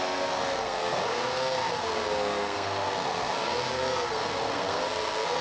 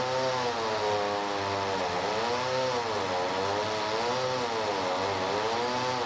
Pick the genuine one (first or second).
second